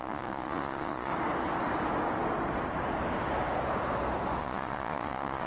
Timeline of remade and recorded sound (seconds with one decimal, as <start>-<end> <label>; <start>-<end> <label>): 0.0-1.1 remade; 1.1-4.4 recorded; 4.4-5.5 remade

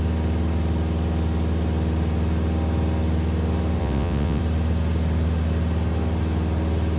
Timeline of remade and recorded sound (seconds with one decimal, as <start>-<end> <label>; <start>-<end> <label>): 0.0-3.8 recorded; 3.8-4.4 remade; 4.4-7.0 recorded

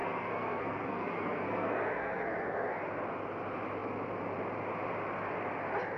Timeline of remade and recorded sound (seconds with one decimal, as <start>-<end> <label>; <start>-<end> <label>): 0.0-2.7 remade; 2.7-6.0 recorded

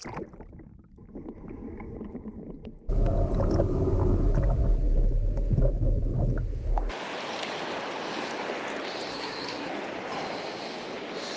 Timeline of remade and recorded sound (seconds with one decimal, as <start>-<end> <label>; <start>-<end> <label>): 0.0-9.1 recorded; 9.1-9.8 remade; 9.8-11.4 recorded

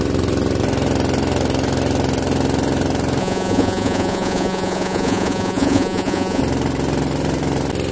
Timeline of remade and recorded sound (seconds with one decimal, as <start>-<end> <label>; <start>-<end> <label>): 0.0-3.2 recorded; 3.2-6.4 remade; 6.4-7.9 recorded